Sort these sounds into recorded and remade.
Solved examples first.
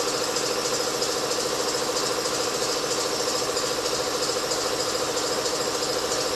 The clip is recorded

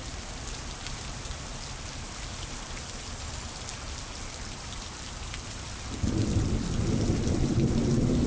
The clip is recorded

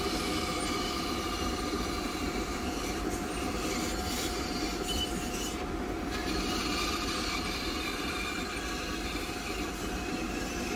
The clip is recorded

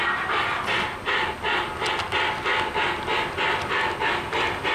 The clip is recorded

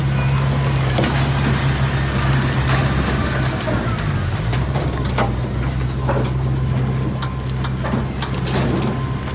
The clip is recorded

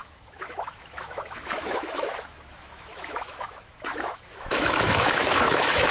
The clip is remade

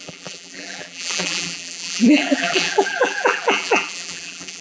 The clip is remade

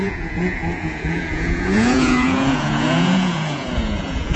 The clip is remade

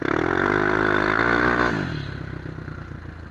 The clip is recorded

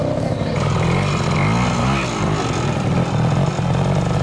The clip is recorded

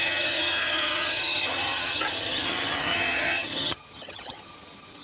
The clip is remade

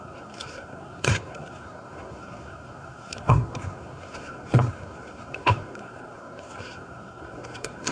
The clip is remade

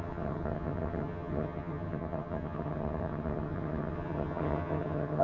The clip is remade